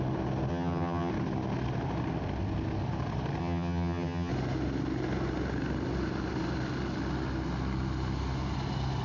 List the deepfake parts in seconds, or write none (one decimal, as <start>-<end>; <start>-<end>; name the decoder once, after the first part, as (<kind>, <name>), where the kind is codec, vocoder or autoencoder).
0.5-1.1 (vocoder, HiFi-GAN); 3.4-4.3